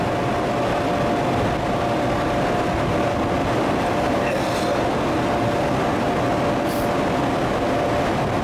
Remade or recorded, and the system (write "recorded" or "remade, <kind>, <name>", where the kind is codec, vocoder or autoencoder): recorded